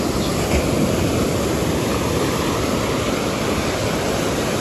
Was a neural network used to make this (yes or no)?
no